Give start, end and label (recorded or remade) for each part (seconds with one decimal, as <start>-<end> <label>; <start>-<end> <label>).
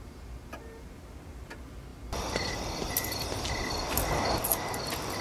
0.0-5.2 recorded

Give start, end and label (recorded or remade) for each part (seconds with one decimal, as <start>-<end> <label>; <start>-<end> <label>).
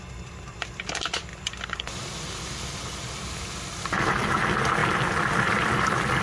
0.0-6.2 remade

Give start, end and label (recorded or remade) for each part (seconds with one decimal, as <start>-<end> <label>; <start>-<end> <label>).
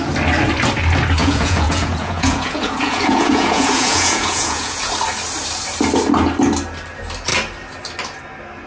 0.0-1.2 recorded; 1.2-4.9 remade; 4.9-8.7 recorded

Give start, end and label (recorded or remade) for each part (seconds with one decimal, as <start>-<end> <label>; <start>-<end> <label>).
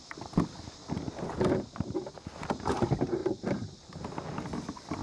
0.0-0.8 remade; 0.8-2.6 recorded; 2.6-5.0 remade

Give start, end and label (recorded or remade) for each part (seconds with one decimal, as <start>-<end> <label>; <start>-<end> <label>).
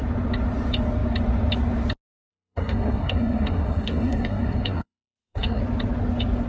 0.0-2.3 recorded; 2.3-5.6 remade; 5.6-6.5 recorded